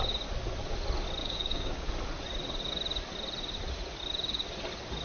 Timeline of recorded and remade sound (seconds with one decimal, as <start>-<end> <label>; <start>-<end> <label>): 0.0-1.2 recorded; 1.2-1.9 remade; 1.9-5.0 recorded